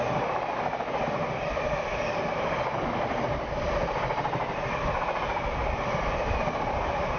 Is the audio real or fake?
real